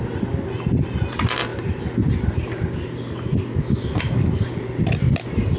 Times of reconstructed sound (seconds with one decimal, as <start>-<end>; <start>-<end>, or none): none